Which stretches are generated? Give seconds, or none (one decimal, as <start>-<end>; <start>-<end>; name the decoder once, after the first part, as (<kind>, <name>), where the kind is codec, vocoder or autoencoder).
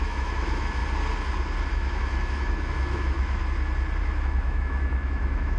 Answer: 0.0-0.8 (autoencoder, DAC-VAE); 1.7-3.4; 4.0-5.6